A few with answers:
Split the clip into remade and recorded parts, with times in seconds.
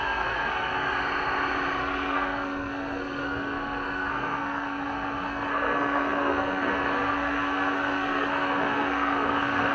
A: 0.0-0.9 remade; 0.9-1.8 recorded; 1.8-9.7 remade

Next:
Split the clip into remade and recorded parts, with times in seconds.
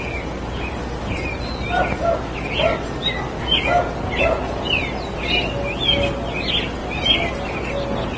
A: 0.0-6.8 recorded; 6.8-7.3 remade; 7.3-8.2 recorded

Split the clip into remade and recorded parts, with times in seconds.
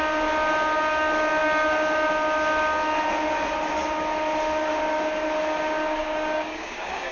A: 0.0-6.0 recorded; 6.0-7.1 remade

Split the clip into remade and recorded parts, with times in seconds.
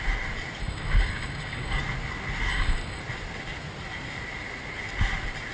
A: 0.0-0.6 recorded; 0.6-1.8 remade; 1.8-2.5 recorded; 2.5-3.0 remade; 3.0-5.5 recorded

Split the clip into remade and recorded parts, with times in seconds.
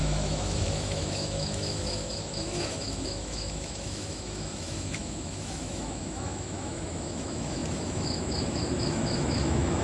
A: 0.0-9.8 remade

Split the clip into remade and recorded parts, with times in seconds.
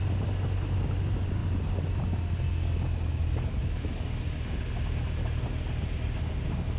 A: 0.0-6.8 recorded